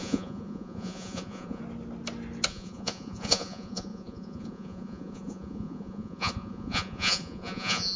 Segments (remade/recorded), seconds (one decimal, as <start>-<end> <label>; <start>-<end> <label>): 0.0-1.6 remade; 1.6-2.5 recorded; 2.5-8.0 remade